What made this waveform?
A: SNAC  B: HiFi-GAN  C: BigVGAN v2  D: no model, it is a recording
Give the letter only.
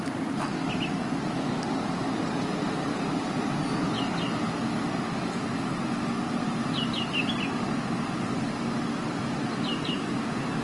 D